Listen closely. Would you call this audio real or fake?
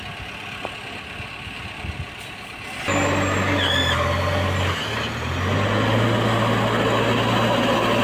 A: real